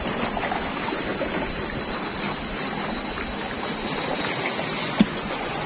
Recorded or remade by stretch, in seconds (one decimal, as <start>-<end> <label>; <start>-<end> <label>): 0.0-4.8 recorded; 4.8-5.7 remade